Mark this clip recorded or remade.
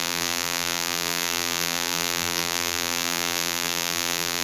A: remade